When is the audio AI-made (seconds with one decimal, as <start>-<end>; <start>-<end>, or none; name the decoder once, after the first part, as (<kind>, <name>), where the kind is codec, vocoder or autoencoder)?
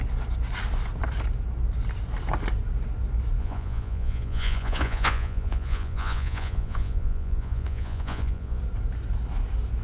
3.4-8.6 (vocoder, Vocos)